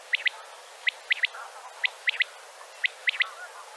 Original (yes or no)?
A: yes